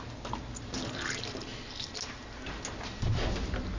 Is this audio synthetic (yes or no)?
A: no